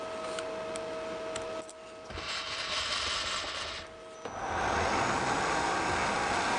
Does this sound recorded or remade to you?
recorded